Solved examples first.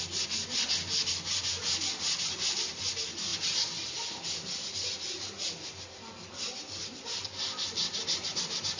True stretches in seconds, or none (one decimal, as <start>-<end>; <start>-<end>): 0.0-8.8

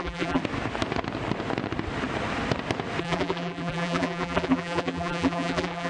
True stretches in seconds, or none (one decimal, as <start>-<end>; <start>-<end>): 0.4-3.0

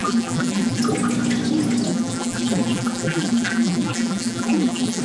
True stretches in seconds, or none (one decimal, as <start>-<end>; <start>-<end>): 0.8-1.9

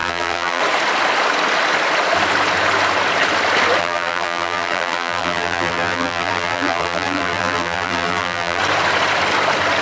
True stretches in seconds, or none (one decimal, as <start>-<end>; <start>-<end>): 0.6-3.8; 8.6-9.8

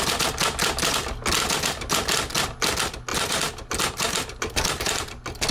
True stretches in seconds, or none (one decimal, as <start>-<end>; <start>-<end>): 0.0-3.1; 5.0-5.5